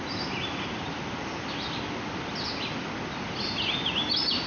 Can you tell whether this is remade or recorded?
recorded